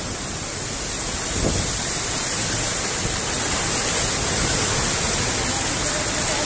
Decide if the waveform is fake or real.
real